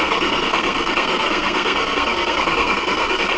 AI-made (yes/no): yes